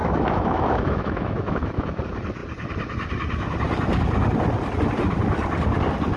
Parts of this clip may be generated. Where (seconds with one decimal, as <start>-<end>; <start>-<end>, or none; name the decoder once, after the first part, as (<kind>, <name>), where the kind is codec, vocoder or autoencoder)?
0.0-2.0 (autoencoder, DAC-VAE)